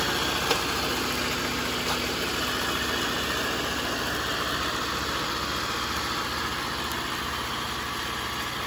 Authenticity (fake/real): real